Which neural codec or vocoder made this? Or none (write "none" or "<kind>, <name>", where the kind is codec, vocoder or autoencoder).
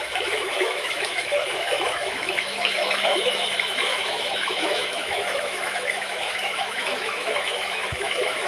autoencoder, DAC-VAE